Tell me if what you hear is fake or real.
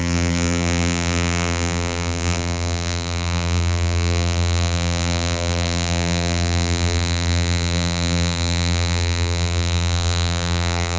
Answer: fake